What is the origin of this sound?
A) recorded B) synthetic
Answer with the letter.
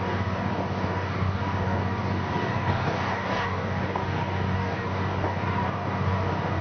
B